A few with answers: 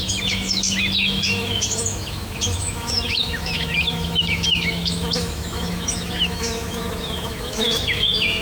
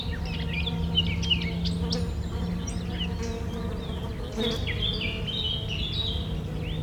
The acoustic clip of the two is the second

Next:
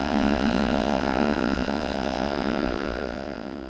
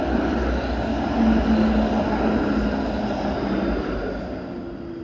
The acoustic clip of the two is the second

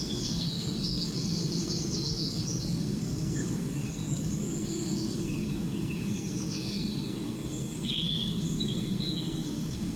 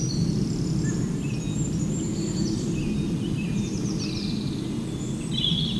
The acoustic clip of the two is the second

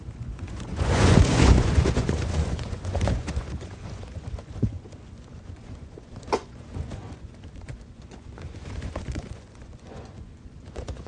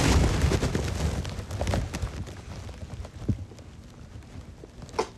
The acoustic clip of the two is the second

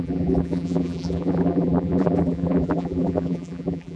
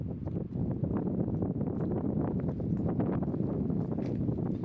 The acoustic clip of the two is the second